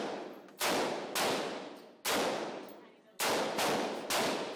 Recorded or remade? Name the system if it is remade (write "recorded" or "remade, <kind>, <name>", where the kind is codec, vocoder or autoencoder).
recorded